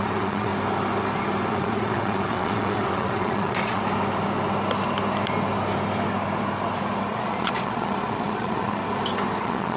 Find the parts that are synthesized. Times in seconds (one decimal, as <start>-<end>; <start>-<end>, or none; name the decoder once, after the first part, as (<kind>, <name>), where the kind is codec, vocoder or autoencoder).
0.0-0.5 (vocoder, Vocos); 1.5-3.8; 7.1-8.8; 9.4-9.8